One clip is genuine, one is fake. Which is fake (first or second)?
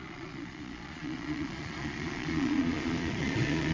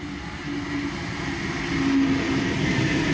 first